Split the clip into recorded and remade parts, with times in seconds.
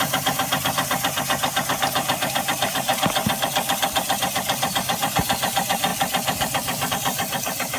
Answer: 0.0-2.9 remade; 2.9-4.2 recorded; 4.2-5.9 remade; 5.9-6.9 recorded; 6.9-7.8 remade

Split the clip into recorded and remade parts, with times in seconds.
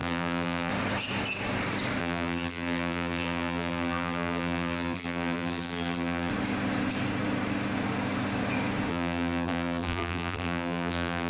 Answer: 0.0-0.7 remade; 0.7-2.0 recorded; 2.0-6.3 remade; 6.3-8.9 recorded; 8.9-11.3 remade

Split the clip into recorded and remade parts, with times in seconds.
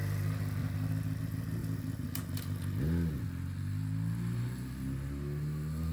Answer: 0.0-0.6 recorded; 0.6-1.2 remade; 1.2-1.6 recorded; 1.6-2.1 remade; 2.1-5.9 recorded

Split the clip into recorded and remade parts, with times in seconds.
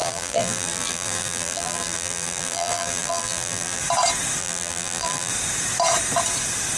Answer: 0.0-3.8 remade; 3.8-4.4 recorded; 4.4-5.3 remade; 5.3-6.8 recorded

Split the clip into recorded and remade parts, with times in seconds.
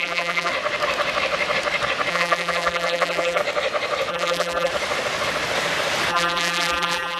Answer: 0.0-0.5 remade; 0.5-2.1 recorded; 2.1-3.4 remade; 3.4-4.1 recorded; 4.1-4.7 remade; 4.7-6.1 recorded; 6.1-7.2 remade